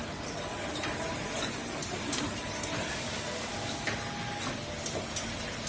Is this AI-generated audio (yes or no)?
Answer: no